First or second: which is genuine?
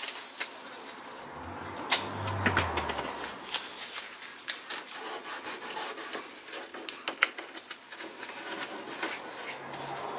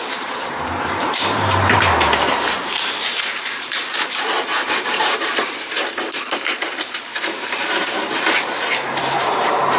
first